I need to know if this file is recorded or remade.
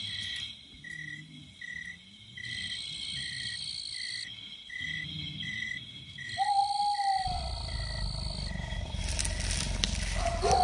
recorded